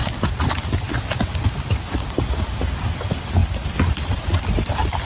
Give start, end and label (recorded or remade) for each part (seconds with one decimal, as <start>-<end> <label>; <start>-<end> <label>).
0.0-5.0 recorded